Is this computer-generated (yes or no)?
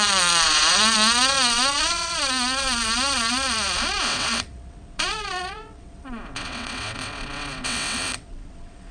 yes